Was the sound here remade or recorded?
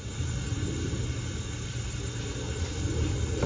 recorded